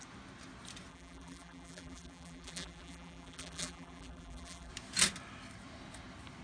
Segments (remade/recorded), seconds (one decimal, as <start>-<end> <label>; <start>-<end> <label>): 0.0-0.9 recorded; 0.9-4.7 remade; 4.7-6.4 recorded